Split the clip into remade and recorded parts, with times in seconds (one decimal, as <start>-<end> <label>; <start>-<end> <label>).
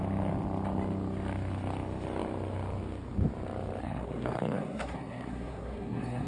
0.0-3.8 recorded; 3.8-6.3 remade